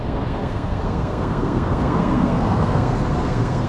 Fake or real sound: fake